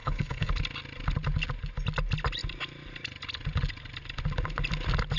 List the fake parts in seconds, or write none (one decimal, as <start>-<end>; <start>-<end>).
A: 0.0-0.5